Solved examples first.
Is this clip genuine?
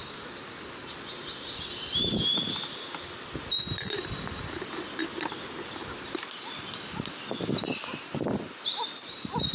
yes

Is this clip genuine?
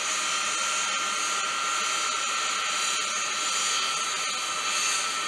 yes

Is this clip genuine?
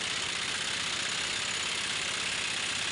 yes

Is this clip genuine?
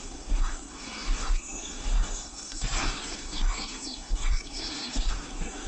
no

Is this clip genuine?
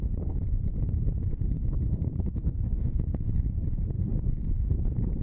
no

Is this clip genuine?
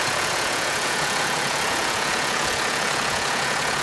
no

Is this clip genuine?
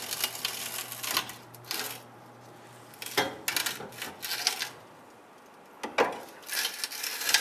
yes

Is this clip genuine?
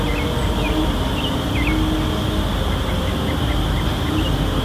yes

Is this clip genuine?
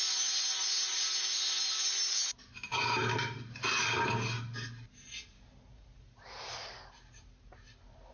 yes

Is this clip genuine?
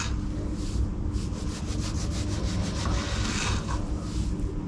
yes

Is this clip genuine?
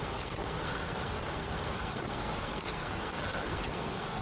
no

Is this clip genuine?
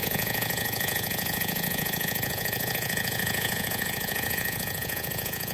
no